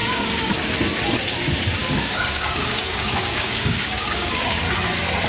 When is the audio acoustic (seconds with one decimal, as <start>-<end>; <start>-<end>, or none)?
0.5-1.8; 4.6-5.3